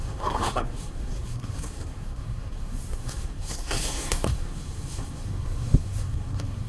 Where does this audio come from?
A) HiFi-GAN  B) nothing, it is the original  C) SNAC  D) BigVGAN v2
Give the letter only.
C